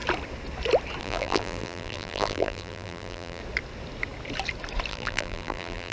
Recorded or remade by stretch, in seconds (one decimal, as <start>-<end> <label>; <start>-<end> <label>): 0.0-1.0 recorded; 1.0-3.4 remade; 3.4-4.9 recorded; 4.9-5.9 remade